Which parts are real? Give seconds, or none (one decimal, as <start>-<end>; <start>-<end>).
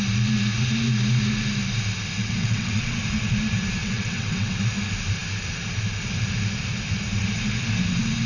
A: 0.0-2.2; 3.0-3.8; 4.6-8.3